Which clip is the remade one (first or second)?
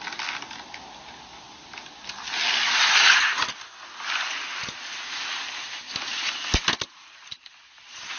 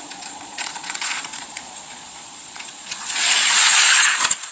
second